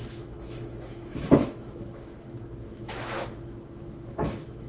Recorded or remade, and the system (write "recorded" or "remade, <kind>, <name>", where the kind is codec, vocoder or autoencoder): remade, autoencoder, DAC-VAE